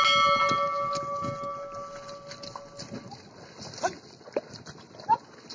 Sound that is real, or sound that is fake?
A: real